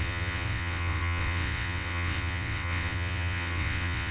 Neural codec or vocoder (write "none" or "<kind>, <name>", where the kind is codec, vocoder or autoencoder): vocoder, WaveNeXt